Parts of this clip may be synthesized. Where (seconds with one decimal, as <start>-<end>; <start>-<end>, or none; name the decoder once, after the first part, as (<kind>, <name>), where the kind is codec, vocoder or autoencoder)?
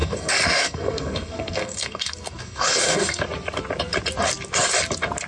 0.0-3.2 (codec, SNAC)